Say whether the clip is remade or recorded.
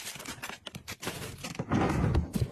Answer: recorded